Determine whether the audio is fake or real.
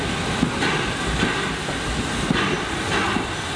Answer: real